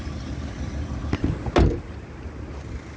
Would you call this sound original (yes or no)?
yes